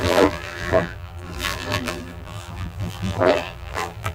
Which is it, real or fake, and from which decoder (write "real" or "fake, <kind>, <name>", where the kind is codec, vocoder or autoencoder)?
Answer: fake, vocoder, BigVGAN v2